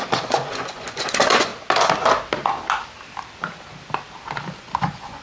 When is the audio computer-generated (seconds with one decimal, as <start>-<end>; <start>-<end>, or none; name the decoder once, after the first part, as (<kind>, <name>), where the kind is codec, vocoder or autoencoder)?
0.0-1.5 (vocoder, Vocos); 4.6-5.2